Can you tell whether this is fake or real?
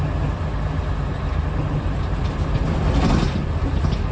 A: real